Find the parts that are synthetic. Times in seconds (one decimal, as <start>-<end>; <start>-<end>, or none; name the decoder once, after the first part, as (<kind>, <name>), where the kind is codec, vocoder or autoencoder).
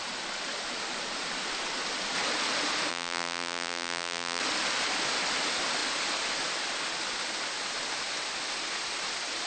2.9-4.4 (vocoder, BigVGAN v2)